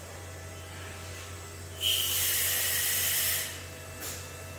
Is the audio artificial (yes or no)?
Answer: no